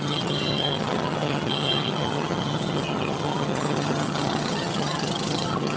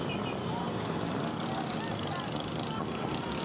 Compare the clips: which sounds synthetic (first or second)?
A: first